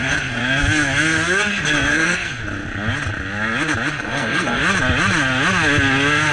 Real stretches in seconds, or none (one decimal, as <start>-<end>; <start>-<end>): 0.4-1.5; 2.4-3.9; 4.6-6.3